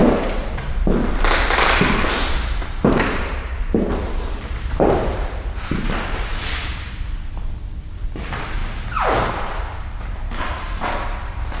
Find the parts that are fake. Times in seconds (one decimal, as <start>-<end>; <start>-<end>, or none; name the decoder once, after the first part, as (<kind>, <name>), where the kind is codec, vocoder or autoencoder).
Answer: 0.0-8.6 (vocoder, BigVGAN v2); 9.3-11.6